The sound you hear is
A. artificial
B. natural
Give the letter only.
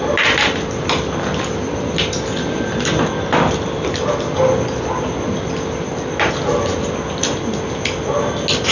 B